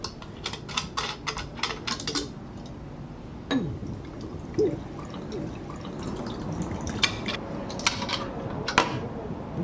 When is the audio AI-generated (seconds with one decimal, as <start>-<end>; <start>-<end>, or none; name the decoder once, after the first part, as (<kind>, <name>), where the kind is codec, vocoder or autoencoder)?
none